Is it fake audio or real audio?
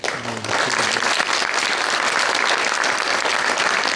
real